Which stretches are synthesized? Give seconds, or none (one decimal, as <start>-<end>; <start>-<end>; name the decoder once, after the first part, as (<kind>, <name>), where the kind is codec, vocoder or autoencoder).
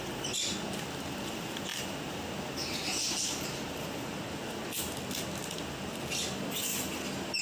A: 6.7-7.4 (vocoder, BigVGAN v2)